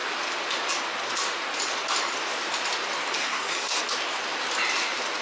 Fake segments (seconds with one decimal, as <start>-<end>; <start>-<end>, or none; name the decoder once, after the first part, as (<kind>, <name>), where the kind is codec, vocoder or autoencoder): 3.2-3.8 (codec, SNAC)